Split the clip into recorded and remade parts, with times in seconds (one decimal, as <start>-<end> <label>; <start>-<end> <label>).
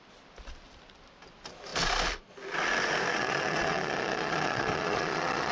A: 0.0-3.1 recorded; 3.1-5.5 remade